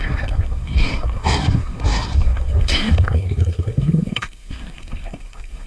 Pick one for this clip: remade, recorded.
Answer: remade